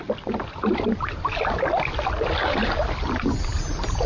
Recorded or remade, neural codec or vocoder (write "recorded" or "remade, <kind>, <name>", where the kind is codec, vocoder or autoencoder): recorded